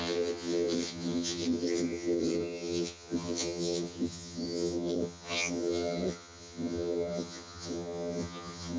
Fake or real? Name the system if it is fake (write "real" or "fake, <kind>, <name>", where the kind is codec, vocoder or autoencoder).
fake, vocoder, HiFi-GAN